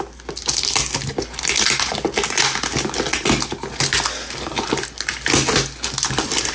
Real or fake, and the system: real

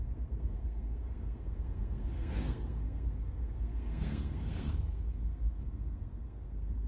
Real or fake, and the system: fake, codec, SNAC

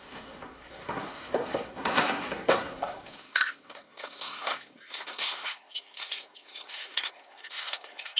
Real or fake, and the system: fake, codec, SNAC